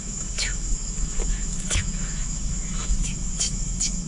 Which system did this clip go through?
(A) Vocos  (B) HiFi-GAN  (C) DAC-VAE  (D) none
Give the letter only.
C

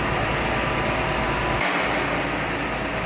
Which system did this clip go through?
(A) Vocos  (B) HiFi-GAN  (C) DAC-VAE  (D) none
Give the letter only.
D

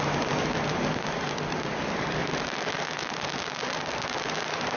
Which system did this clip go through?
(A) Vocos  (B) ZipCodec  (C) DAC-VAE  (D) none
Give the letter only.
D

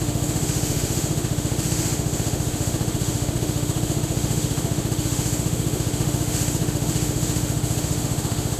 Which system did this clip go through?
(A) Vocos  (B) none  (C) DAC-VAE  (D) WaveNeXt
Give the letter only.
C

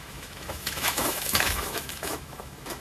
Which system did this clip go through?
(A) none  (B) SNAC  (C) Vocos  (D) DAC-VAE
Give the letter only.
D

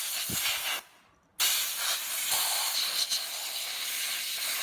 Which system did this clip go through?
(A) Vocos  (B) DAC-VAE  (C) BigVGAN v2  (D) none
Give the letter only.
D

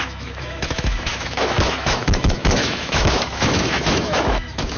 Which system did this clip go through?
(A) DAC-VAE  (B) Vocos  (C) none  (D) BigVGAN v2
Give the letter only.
A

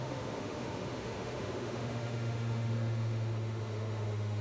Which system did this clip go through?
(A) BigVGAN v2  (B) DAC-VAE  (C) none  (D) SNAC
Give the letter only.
B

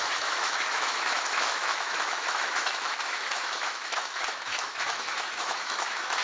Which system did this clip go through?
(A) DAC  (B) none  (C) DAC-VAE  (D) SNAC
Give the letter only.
C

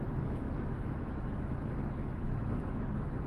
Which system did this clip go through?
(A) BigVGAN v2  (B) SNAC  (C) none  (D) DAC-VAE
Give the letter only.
D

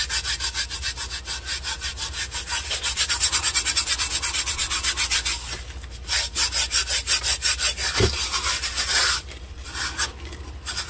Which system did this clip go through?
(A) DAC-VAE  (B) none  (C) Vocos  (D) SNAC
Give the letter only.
B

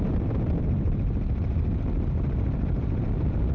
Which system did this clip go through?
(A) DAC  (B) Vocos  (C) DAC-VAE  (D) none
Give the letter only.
D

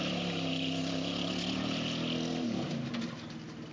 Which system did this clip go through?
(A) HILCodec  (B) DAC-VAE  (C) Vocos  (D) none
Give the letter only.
D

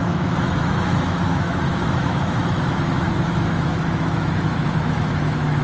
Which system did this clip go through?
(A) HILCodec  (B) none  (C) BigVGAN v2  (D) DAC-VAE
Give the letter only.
D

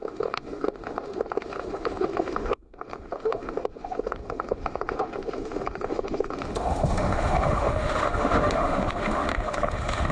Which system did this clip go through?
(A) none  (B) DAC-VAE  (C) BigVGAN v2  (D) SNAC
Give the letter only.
B